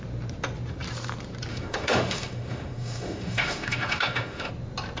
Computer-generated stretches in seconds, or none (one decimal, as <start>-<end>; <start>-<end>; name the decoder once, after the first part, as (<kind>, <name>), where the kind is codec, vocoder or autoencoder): 1.5-4.5 (autoencoder, DAC-VAE)